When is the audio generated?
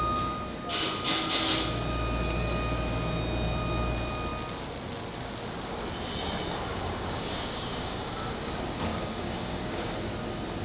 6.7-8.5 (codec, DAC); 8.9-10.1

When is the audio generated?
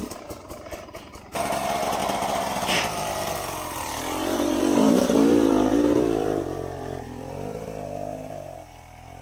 0.0-9.2 (vocoder, BigVGAN v2)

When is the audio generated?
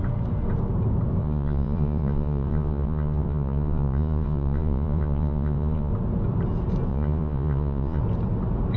1.2-5.9 (vocoder, Vocos); 6.9-8.0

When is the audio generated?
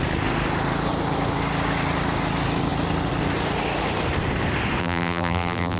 4.8-5.8 (vocoder, BigVGAN v2)